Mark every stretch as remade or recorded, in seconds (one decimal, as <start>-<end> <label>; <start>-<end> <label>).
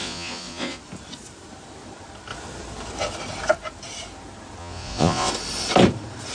0.0-0.8 remade; 0.8-4.6 recorded; 4.6-5.3 remade; 5.3-6.3 recorded